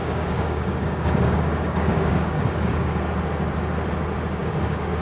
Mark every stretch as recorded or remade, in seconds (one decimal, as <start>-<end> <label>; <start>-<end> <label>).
0.0-3.0 remade; 3.0-4.4 recorded; 4.4-5.0 remade